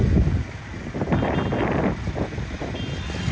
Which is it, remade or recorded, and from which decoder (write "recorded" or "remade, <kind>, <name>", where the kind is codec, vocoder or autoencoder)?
recorded